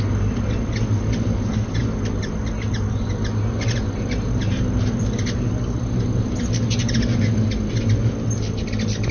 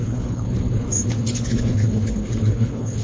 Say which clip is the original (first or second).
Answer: first